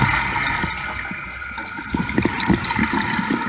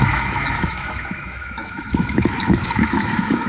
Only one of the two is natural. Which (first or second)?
first